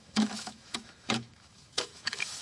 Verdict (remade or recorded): remade